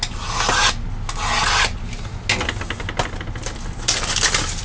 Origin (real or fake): real